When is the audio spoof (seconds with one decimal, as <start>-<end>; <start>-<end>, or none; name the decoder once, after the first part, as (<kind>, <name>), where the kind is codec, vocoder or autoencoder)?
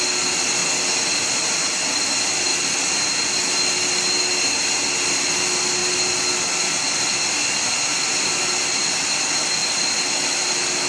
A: none